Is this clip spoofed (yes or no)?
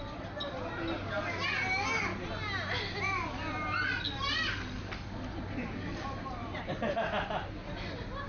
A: no